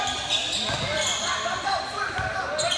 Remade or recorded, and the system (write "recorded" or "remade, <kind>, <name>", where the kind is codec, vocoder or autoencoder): recorded